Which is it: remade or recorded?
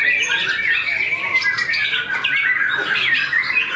recorded